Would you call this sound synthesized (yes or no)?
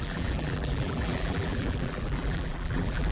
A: yes